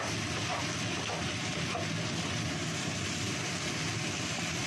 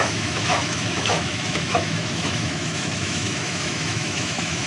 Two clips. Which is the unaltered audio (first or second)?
first